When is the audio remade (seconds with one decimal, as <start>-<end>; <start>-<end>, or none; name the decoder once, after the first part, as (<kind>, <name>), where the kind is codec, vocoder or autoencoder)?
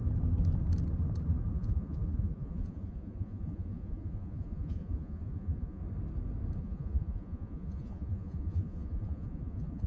1.5-5.8 (vocoder, Vocos); 6.6-9.9